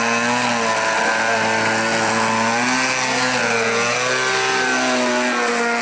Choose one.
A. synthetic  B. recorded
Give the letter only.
B